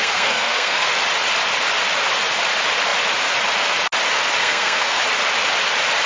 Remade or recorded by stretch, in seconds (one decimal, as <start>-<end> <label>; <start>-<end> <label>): 0.0-0.9 remade; 0.9-4.4 recorded; 4.4-5.0 remade; 5.0-6.1 recorded